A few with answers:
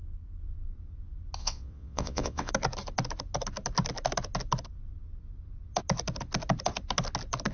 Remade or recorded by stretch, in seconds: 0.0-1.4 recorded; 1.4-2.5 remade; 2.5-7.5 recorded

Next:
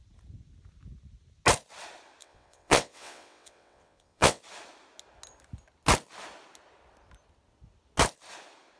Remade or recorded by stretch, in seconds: 0.0-2.2 recorded; 2.2-4.4 remade; 4.4-8.8 recorded

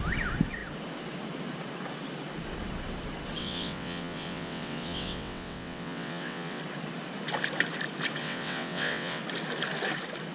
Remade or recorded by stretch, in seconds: 0.0-3.4 recorded; 3.4-6.6 remade; 6.6-8.2 recorded; 8.2-9.2 remade; 9.2-10.3 recorded

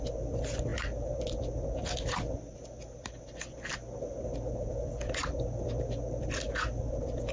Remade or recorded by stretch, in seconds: 0.0-7.3 recorded